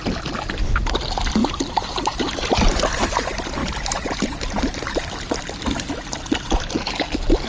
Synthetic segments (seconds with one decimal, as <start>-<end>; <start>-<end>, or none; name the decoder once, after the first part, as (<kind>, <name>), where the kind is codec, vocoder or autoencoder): 1.4-3.1 (vocoder, BigVGAN v2); 3.6-5.1